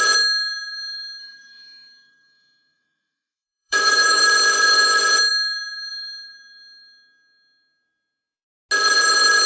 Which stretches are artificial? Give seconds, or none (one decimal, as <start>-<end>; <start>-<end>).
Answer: 1.2-4.2